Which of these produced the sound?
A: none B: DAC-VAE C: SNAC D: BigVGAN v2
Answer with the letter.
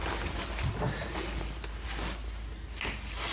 A